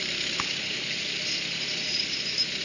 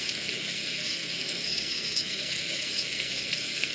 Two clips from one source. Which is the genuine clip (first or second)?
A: first